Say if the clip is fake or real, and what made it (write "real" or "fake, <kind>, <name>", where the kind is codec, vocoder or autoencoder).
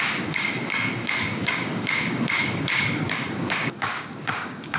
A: fake, codec, DAC